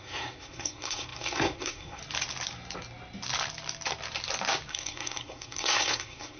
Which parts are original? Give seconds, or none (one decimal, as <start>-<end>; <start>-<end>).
2.0-4.7